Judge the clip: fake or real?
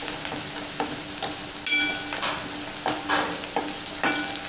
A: real